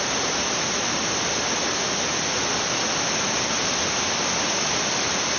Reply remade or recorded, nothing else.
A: recorded